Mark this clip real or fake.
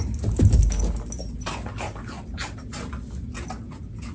real